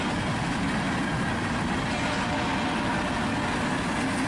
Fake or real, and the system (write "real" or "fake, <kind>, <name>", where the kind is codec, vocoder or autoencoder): real